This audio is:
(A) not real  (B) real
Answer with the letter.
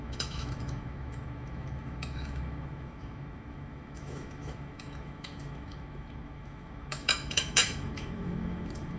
A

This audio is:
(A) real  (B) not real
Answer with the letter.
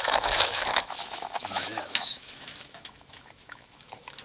B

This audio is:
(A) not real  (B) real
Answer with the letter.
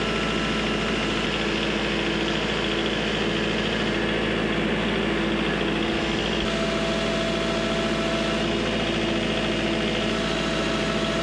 B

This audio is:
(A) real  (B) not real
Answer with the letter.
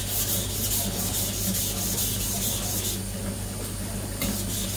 A